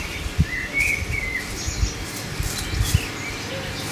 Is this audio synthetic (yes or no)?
no